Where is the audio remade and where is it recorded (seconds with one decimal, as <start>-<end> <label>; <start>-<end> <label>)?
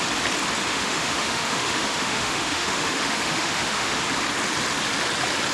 0.0-0.7 recorded; 0.7-4.0 remade; 4.0-5.5 recorded